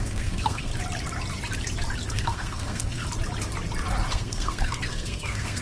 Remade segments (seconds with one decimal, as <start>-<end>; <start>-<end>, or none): 0.0-0.7; 2.1-3.0; 4.1-5.6